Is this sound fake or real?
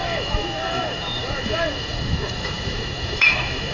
fake